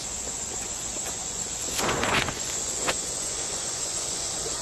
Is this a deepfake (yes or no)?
yes